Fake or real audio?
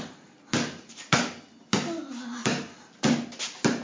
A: real